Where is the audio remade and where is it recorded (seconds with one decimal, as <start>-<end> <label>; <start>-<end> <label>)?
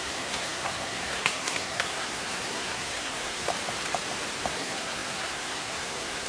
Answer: 0.0-3.5 remade; 3.5-4.5 recorded; 4.5-6.3 remade